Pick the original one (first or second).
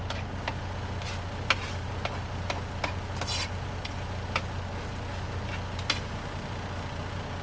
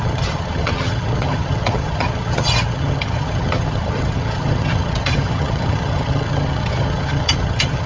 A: first